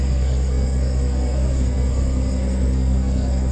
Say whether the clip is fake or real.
fake